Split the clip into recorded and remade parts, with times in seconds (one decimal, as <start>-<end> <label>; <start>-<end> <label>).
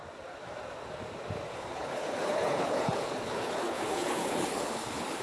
0.0-1.5 recorded; 1.5-5.2 remade